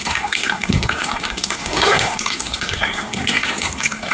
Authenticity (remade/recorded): remade